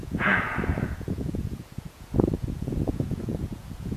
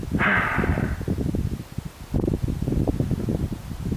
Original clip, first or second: second